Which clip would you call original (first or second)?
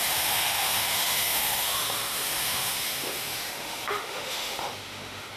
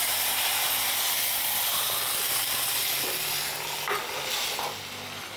second